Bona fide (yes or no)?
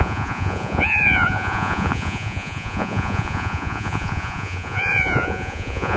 no